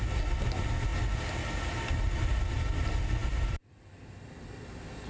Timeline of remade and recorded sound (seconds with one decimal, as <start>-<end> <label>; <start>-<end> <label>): 0.0-3.2 recorded; 3.2-3.9 remade; 3.9-5.1 recorded